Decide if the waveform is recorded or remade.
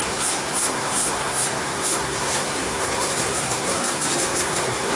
remade